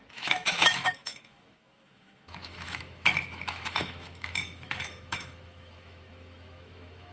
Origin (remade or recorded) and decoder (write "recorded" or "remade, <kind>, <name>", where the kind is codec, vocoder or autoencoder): remade, autoencoder, DAC-VAE